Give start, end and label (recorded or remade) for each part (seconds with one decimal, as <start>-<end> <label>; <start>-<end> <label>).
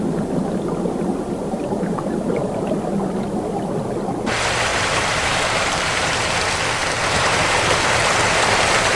0.0-4.7 recorded; 4.7-6.1 remade; 6.1-6.8 recorded; 6.8-9.0 remade